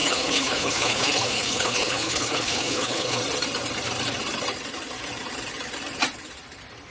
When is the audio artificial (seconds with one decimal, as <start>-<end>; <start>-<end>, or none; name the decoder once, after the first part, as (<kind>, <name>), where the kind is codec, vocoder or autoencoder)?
0.0-3.2 (codec, HILCodec)